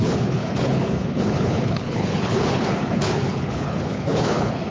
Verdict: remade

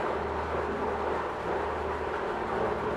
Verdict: recorded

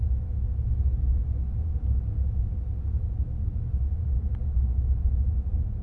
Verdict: recorded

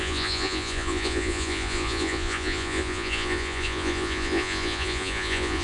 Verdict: remade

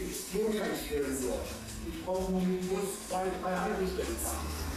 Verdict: remade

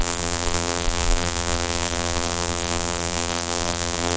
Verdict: remade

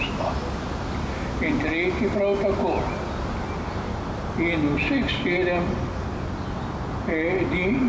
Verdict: recorded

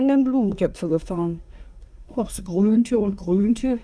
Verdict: remade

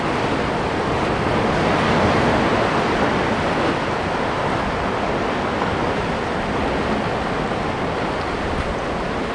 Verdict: recorded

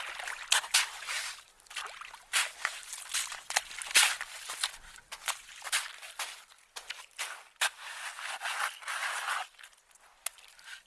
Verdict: recorded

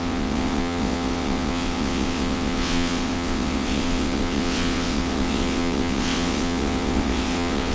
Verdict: remade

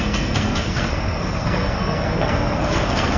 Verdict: remade